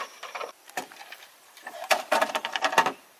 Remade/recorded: remade